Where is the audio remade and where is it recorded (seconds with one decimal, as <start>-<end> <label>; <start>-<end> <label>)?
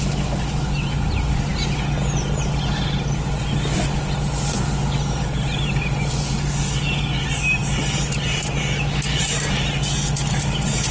0.0-10.9 recorded